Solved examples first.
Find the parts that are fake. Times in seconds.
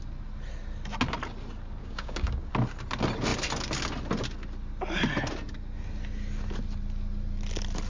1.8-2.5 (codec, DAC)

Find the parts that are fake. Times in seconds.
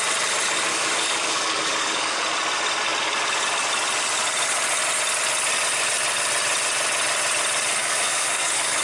0.7-2.2 (codec, DAC); 7.8-8.8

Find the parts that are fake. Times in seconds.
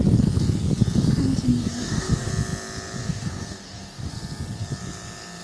1.5-2.3 (codec, DAC); 3.1-4.1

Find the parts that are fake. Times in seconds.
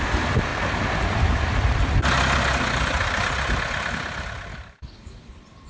4.5-5.3 (codec, DAC)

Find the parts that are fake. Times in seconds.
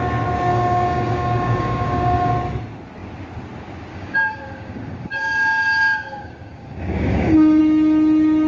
0.5-2.3 (codec, DAC); 3.9-7.6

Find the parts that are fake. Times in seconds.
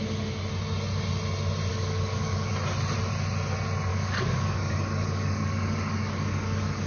1.7-2.5 (codec, DAC); 3.9-6.9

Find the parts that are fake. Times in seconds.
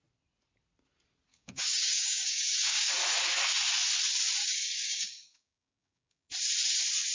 1.3-2.9 (codec, DAC); 4.4-6.3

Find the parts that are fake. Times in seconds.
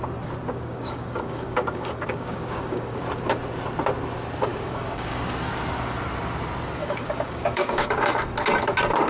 0.5-3.0 (codec, DAC); 4.5-5.3; 6.8-8.2